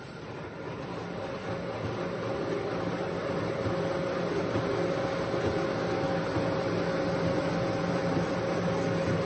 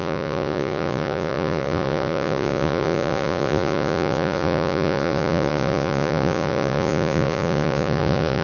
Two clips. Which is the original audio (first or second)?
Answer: first